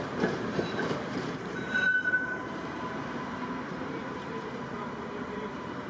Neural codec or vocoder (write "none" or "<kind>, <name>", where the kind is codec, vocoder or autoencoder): vocoder, BigVGAN v2